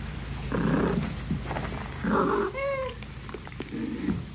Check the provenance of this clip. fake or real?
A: real